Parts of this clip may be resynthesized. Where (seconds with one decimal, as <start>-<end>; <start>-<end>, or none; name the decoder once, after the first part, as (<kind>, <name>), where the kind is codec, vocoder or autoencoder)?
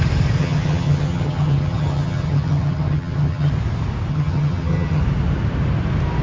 0.4-3.5 (vocoder, HiFi-GAN); 4.1-5.0